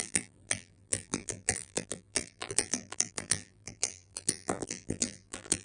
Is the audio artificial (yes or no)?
yes